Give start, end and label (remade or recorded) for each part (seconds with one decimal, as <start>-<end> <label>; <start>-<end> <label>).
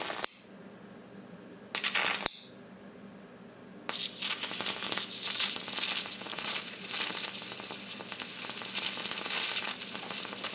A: 0.0-6.3 recorded; 6.3-6.9 remade; 6.9-10.5 recorded